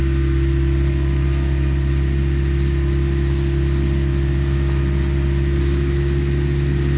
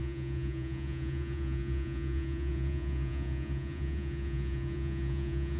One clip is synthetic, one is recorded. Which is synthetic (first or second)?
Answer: second